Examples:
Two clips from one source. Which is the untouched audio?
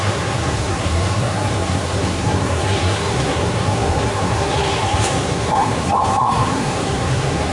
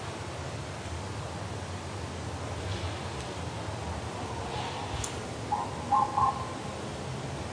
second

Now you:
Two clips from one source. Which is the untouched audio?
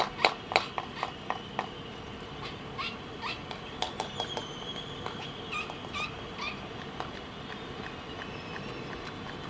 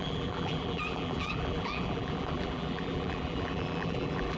first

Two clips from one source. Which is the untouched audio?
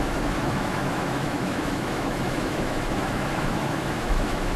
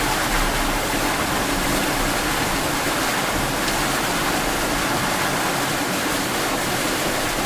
second